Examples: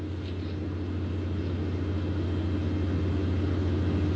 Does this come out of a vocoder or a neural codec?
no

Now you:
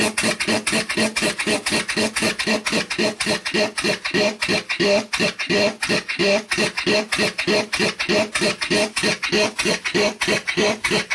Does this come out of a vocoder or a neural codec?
no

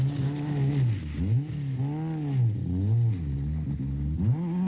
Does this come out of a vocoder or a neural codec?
no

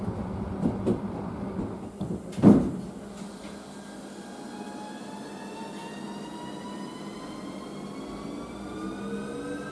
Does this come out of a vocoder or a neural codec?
no